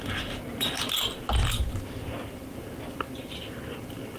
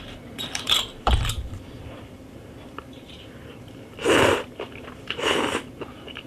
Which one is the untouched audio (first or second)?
first